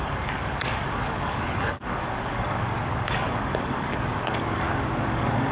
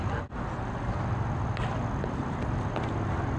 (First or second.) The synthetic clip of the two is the first